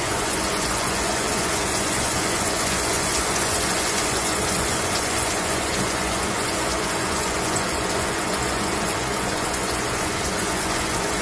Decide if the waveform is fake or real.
fake